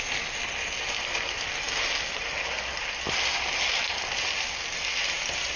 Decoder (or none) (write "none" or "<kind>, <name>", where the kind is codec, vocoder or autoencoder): none